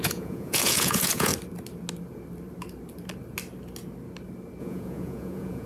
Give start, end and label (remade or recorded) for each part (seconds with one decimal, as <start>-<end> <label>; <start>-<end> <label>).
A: 0.0-1.3 remade; 1.3-4.6 recorded; 4.6-5.7 remade